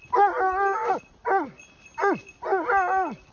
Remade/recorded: recorded